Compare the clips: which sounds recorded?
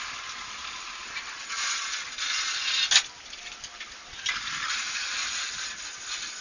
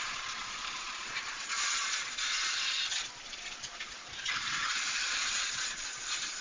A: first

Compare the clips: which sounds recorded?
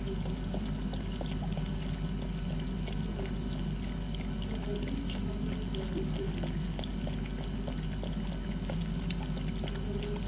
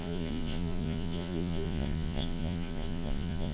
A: first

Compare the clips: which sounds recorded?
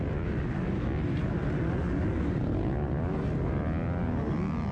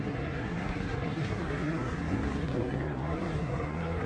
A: first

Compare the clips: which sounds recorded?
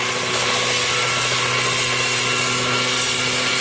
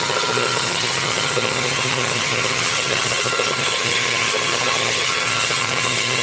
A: first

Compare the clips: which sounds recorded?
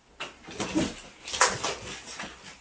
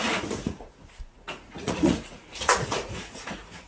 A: first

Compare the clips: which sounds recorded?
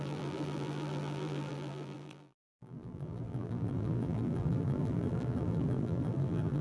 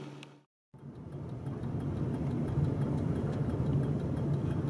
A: second